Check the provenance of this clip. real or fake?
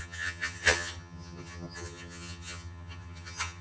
fake